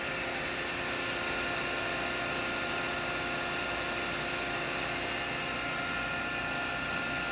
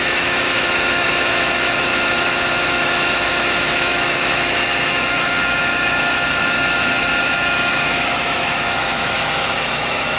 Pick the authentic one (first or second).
first